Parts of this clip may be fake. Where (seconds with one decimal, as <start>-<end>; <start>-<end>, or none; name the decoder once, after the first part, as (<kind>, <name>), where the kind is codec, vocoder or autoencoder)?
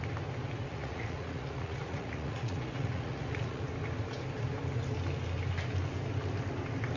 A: 0.7-3.7 (vocoder, Vocos)